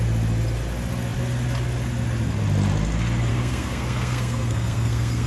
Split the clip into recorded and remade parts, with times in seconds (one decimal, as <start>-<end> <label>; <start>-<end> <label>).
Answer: 0.0-3.3 recorded; 3.3-5.3 remade